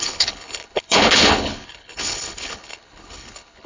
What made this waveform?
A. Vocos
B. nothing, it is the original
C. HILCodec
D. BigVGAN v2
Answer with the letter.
C